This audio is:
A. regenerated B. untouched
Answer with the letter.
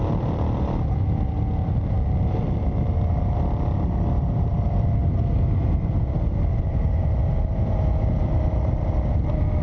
B